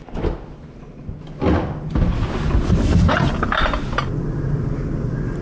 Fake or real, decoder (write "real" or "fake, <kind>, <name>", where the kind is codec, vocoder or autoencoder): real